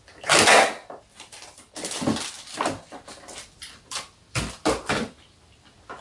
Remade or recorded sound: recorded